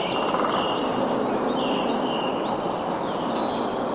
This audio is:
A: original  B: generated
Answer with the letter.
A